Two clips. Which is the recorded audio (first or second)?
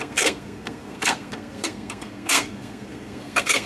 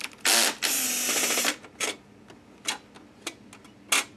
second